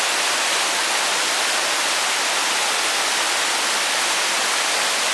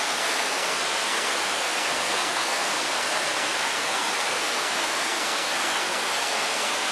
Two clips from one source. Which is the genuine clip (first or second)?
first